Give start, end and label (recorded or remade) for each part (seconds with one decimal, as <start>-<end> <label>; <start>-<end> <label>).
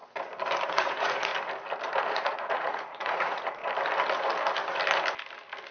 0.0-0.7 recorded; 0.7-1.3 remade; 1.3-2.1 recorded; 2.1-3.6 remade; 3.6-5.7 recorded